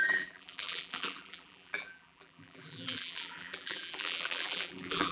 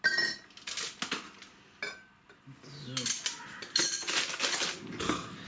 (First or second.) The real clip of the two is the second